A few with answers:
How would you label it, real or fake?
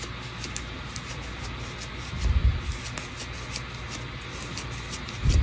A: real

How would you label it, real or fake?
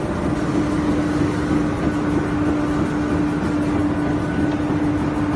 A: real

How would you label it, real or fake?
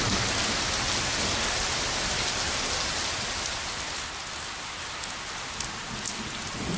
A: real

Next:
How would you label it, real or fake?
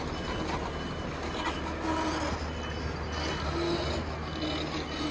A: real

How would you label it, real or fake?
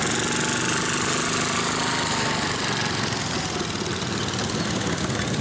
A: real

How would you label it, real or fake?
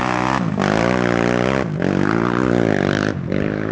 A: real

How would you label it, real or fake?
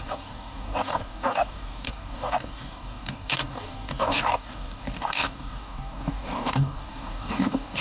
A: fake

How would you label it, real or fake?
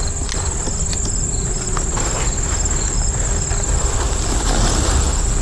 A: real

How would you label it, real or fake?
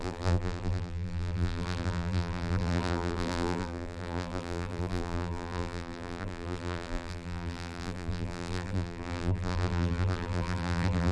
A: fake